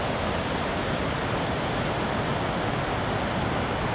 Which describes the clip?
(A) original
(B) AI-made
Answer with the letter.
A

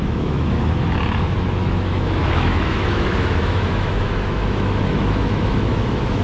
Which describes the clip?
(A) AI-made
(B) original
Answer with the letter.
A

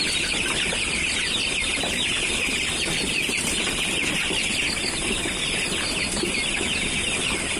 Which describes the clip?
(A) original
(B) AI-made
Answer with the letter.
A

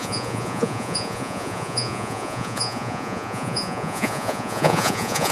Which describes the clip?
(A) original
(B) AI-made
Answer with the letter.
B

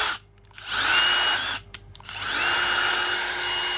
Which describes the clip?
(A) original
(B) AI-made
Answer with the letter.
A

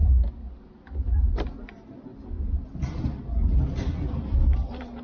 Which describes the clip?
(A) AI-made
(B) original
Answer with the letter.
B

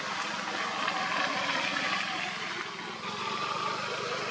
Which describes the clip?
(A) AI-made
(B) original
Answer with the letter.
B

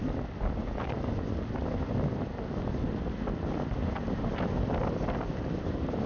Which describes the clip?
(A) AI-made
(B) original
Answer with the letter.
B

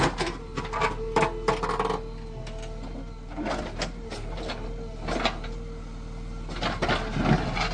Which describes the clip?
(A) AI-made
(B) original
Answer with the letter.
B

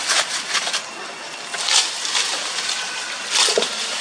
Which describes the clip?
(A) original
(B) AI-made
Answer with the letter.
A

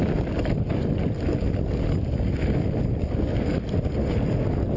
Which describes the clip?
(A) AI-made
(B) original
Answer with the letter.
B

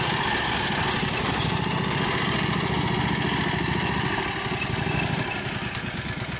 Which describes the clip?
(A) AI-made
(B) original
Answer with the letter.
B